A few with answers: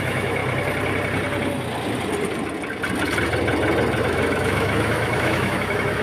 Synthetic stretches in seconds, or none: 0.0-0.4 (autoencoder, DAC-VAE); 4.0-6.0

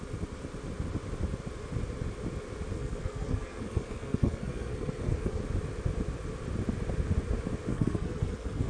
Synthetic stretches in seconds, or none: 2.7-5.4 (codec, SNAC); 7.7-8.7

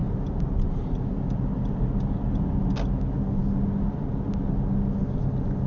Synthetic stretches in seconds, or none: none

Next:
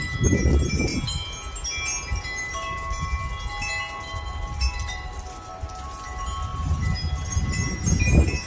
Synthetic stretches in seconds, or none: 6.5-7.1 (vocoder, BigVGAN v2)

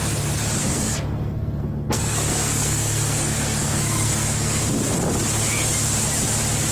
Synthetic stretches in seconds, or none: 0.6-4.6 (codec, SNAC)